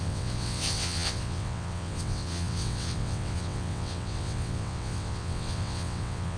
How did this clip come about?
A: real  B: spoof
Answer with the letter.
B